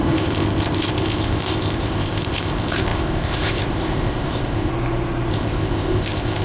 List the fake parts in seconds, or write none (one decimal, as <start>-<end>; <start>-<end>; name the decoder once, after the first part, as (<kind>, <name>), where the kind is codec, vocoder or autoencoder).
0.0-4.7 (codec, ZipCodec); 5.3-6.4